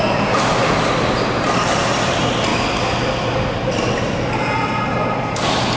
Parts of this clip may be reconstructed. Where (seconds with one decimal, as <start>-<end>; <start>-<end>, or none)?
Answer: none